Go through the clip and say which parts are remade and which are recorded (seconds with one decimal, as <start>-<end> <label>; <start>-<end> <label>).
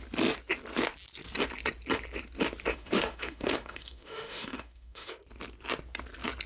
0.0-2.7 recorded; 2.7-5.1 remade; 5.1-6.5 recorded